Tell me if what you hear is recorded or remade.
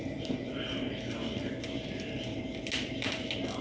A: recorded